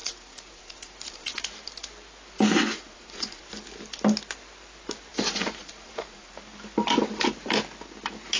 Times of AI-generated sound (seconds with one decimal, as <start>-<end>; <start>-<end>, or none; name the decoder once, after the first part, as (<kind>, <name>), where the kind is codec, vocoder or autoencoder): 0.0-1.4 (vocoder, Vocos); 2.7-3.4; 5.1-6.3